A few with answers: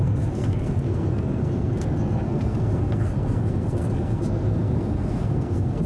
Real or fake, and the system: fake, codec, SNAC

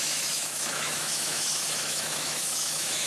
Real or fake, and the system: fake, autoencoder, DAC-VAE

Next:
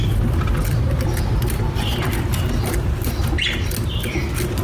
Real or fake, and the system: real